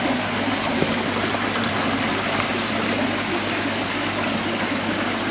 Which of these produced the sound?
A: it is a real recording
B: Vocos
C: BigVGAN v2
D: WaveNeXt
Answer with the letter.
A